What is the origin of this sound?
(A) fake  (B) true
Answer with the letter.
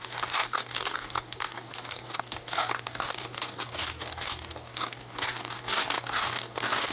A